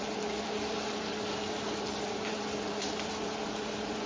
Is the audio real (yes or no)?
no